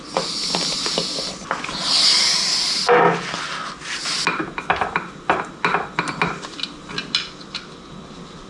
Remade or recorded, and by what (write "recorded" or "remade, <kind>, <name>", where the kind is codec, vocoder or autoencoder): recorded